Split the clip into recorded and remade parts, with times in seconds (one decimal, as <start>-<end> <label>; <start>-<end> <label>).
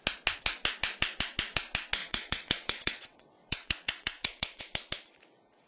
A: 0.0-2.0 recorded; 2.0-4.6 remade; 4.6-5.7 recorded